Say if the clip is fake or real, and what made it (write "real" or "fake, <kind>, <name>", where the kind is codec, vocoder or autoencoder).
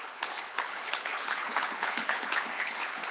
fake, codec, HILCodec